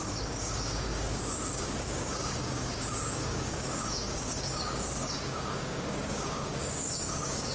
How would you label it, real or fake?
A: fake